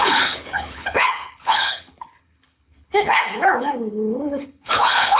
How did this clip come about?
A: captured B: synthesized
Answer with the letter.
B